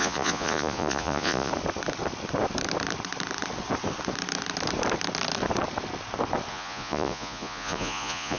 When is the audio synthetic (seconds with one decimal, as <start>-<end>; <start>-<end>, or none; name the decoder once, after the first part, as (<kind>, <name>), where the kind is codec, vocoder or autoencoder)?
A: 0.0-1.5 (vocoder, Vocos); 6.5-8.4